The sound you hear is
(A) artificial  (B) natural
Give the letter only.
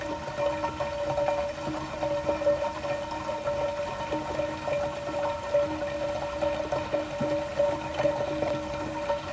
B